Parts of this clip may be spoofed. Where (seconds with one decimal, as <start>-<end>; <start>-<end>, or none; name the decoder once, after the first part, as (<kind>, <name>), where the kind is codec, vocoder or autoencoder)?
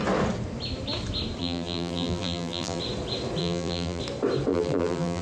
1.4-2.8 (vocoder, BigVGAN v2); 3.4-4.0; 4.5-5.2